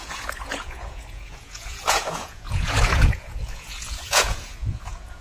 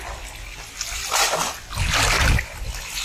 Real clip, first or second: second